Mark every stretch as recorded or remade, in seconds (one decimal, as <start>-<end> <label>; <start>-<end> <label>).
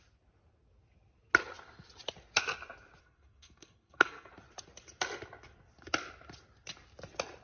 0.0-3.0 recorded; 3.0-4.3 remade; 4.3-7.4 recorded